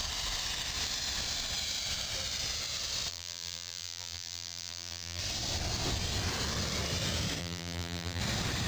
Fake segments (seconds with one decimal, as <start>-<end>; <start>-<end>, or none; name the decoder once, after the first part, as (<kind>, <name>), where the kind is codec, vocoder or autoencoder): 3.1-5.2 (vocoder, BigVGAN v2); 7.4-8.2